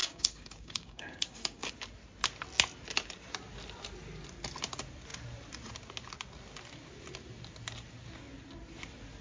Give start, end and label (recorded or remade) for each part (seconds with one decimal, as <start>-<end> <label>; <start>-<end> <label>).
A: 0.0-1.7 remade; 1.7-9.2 recorded